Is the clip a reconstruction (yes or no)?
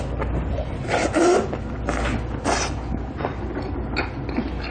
no